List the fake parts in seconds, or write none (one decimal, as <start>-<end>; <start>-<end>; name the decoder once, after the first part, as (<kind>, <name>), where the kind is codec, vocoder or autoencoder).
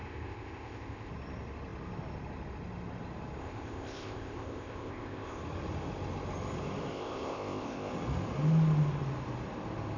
0.0-1.1 (codec, ZipCodec); 3.4-5.4; 6.9-7.9